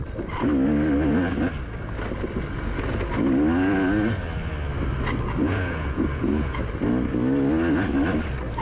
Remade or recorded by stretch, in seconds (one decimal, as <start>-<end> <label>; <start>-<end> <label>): 0.0-5.4 recorded; 5.4-6.7 remade; 6.7-8.6 recorded